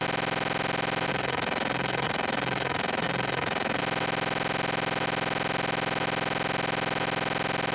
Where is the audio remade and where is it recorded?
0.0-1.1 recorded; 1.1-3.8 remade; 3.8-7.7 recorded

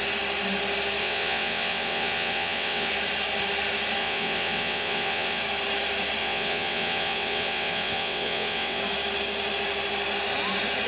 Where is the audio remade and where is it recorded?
0.0-1.0 recorded; 1.0-2.9 remade; 2.9-4.0 recorded; 4.0-5.4 remade; 5.4-6.2 recorded; 6.2-8.8 remade; 8.8-10.9 recorded